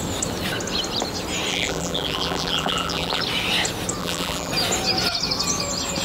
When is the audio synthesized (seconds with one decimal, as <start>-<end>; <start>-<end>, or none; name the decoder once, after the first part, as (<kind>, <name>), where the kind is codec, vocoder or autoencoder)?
1.5-3.2 (vocoder, BigVGAN v2); 4.0-4.5